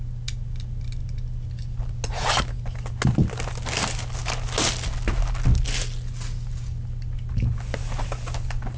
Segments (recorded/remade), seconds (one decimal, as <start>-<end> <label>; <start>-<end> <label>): 0.0-8.8 recorded